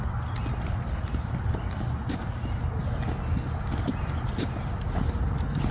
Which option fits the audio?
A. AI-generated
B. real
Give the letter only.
B